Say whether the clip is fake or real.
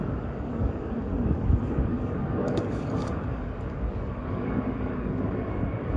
fake